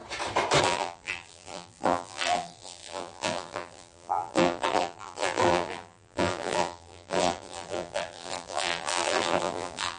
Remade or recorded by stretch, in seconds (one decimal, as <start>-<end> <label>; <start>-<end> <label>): 0.0-0.6 recorded; 0.6-10.0 remade